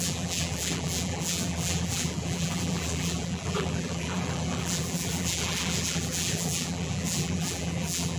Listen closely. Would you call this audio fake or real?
fake